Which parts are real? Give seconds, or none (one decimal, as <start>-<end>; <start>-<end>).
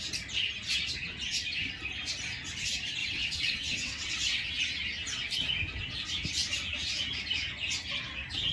0.0-3.0; 4.6-8.5